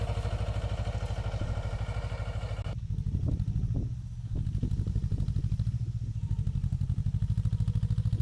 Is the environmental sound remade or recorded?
recorded